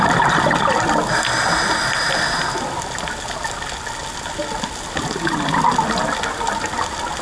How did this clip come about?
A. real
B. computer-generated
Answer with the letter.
A